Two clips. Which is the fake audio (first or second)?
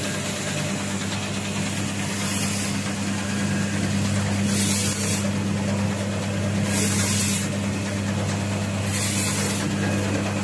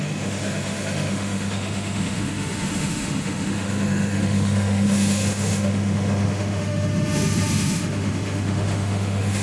second